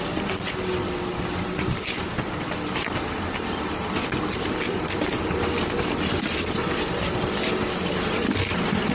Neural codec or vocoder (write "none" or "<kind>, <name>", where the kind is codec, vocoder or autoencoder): none